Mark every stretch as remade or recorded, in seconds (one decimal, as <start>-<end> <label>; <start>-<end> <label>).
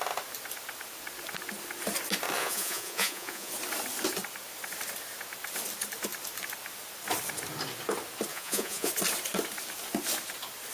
0.0-2.4 recorded; 2.4-3.5 remade; 3.5-8.3 recorded; 8.3-8.9 remade; 8.9-10.7 recorded